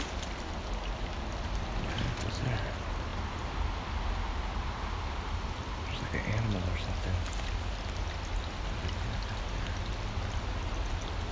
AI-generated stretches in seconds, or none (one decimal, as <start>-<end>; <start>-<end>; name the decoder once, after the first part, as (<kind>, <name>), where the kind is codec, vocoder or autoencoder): none